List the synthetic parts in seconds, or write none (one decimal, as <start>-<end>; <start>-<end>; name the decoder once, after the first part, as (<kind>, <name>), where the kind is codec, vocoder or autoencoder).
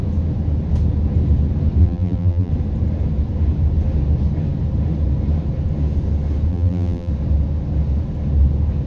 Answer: 1.8-2.5 (vocoder, BigVGAN v2); 6.5-7.1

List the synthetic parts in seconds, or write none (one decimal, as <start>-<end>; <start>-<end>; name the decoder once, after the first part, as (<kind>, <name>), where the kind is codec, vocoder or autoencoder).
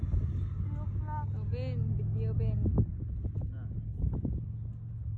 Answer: none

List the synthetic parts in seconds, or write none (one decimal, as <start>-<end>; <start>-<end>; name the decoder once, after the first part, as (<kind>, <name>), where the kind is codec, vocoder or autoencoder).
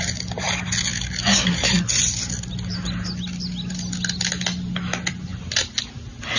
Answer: none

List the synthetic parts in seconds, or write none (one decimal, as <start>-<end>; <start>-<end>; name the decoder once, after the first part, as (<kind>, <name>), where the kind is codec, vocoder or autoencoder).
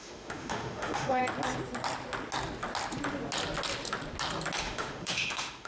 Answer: 0.0-1.2 (autoencoder, DAC-VAE); 4.6-5.7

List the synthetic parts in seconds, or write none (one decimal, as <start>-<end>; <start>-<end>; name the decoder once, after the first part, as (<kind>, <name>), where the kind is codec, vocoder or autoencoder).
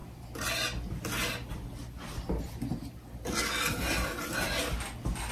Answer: none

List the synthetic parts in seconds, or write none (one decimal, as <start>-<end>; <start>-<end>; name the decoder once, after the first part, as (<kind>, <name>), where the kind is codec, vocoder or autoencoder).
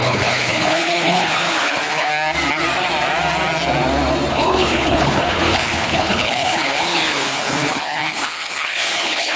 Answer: 0.0-2.1 (codec, HILCodec); 4.3-9.4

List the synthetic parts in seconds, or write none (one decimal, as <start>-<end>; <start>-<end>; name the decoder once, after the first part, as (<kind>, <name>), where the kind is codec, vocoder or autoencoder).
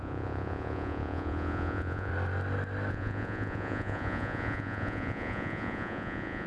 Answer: 0.0-2.1 (vocoder, Vocos); 2.9-6.5